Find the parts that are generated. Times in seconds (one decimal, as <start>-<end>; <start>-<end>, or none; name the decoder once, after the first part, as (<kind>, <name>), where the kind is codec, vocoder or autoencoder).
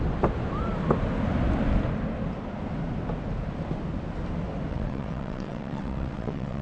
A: 4.7-6.6 (vocoder, WaveNeXt)